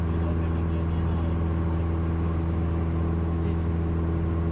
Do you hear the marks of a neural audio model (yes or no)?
no